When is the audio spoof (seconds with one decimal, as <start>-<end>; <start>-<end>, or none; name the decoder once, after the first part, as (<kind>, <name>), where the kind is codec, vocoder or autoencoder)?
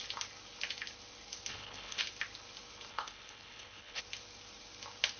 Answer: 1.5-2.0 (codec, HILCodec); 2.9-4.0